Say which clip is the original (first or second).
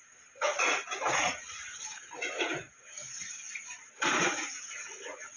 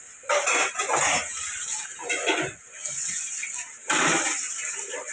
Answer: second